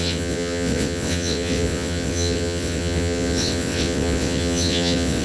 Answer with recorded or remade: remade